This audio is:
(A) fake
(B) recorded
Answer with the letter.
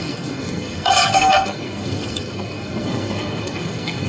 A